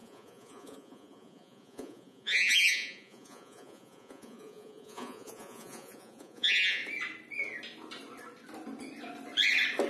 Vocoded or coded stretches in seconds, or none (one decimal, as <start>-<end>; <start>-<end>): 0.0-6.8